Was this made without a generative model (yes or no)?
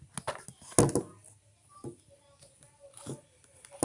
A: yes